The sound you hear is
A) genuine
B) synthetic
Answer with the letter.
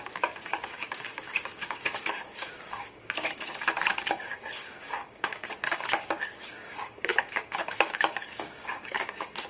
B